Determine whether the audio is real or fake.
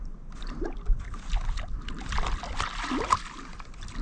real